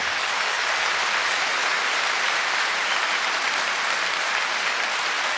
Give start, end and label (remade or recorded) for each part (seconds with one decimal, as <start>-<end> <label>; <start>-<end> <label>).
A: 0.0-0.7 remade; 0.7-5.4 recorded